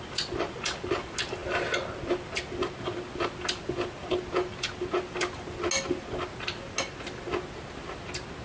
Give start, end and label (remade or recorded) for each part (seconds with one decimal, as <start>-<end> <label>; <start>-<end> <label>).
0.0-8.4 recorded